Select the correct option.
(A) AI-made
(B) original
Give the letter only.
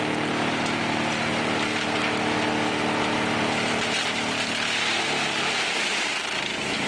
B